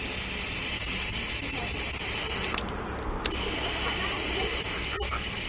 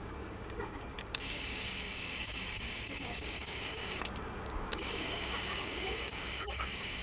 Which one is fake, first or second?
second